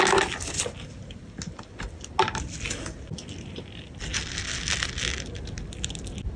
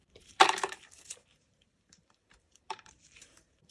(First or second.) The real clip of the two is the first